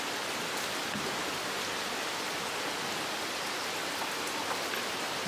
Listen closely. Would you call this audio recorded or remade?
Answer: recorded